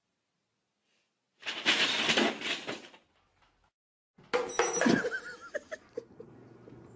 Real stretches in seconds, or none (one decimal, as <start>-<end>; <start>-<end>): 0.0-7.0